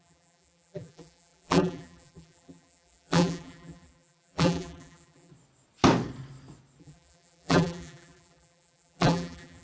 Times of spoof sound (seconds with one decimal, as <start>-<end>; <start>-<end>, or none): 0.0-5.3; 6.8-9.6